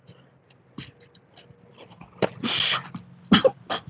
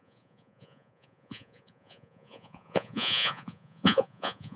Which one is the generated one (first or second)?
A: second